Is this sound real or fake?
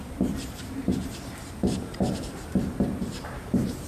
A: fake